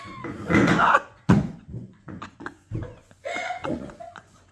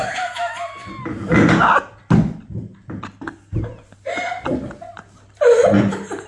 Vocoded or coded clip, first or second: first